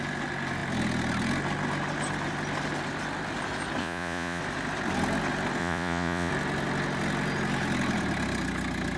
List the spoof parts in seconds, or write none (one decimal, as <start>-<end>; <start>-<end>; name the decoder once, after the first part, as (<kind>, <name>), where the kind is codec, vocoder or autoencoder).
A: 3.8-4.4 (vocoder, Vocos); 5.6-6.3